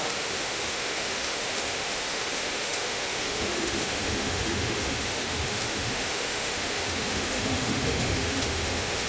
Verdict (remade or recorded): remade